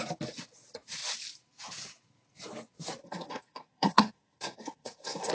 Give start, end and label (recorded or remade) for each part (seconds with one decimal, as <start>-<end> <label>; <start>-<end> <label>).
0.0-3.0 recorded; 3.0-5.3 remade

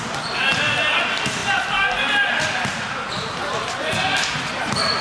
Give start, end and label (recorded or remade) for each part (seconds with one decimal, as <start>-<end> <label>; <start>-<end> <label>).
0.0-5.0 recorded

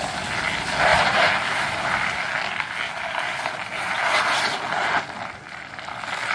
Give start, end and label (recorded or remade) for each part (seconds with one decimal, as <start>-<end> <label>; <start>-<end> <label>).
0.0-6.3 recorded

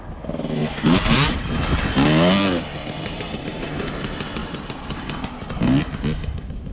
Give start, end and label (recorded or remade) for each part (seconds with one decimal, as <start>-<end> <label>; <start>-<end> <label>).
0.0-2.8 recorded; 2.8-3.9 remade; 3.9-4.4 recorded; 4.4-5.2 remade; 5.2-6.7 recorded

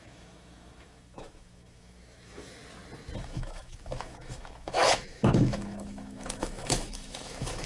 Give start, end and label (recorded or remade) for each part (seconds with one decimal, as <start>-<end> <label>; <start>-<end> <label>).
0.0-2.6 remade; 2.6-3.2 recorded; 3.2-7.7 remade